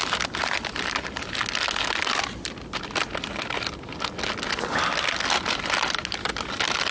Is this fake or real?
real